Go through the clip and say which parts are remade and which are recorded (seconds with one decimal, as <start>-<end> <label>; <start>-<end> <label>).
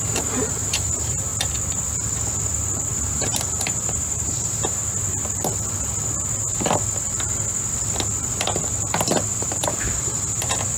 0.0-1.3 remade; 1.3-3.0 recorded; 3.0-4.8 remade; 4.8-9.3 recorded; 9.3-10.8 remade